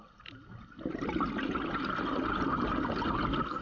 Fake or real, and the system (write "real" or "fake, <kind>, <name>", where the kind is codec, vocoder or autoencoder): real